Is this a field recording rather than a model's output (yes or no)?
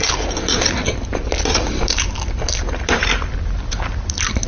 no